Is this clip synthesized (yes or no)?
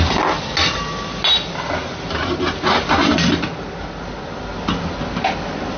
no